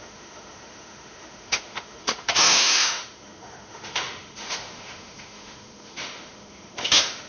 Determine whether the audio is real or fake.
fake